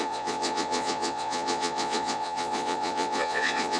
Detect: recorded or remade remade